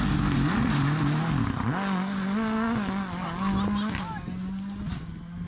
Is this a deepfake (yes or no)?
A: no